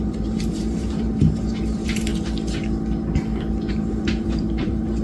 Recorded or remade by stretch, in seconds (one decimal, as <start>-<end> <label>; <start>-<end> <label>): 0.0-2.1 remade; 2.1-3.7 recorded; 3.7-5.0 remade